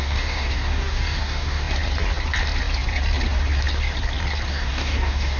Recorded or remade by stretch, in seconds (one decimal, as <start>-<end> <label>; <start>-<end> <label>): 0.0-1.6 remade; 1.6-4.5 recorded; 4.5-5.4 remade